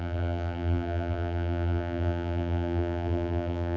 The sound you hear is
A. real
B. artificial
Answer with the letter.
B